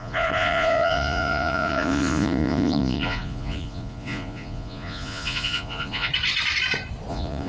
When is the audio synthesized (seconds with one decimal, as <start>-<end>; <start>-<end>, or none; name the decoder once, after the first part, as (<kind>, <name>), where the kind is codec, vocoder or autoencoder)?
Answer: 0.0-6.1 (vocoder, Vocos); 7.1-7.5